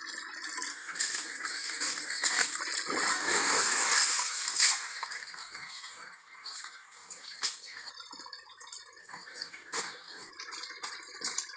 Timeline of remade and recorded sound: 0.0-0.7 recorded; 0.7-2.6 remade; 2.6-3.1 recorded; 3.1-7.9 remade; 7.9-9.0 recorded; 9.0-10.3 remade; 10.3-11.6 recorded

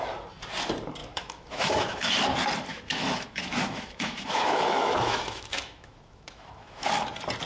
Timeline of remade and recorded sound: 0.0-1.0 recorded; 1.0-2.1 remade; 2.1-2.7 recorded; 2.7-6.9 remade; 6.9-7.5 recorded